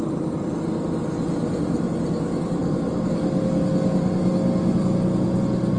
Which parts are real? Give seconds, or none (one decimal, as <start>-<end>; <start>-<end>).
0.0-2.6; 3.6-5.8